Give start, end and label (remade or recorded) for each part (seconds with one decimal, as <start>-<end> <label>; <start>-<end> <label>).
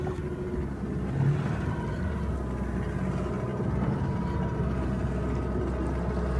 0.0-6.4 recorded